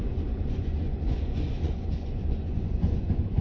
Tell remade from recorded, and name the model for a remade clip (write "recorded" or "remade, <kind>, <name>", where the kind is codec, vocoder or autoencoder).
remade, vocoder, Vocos